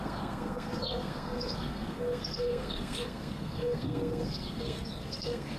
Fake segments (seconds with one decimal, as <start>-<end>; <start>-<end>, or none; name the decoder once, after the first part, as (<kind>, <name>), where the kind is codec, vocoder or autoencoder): 0.0-5.6 (codec, SNAC)